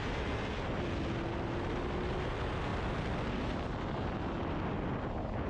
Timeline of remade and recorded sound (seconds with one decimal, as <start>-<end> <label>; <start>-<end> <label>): 0.0-5.5 recorded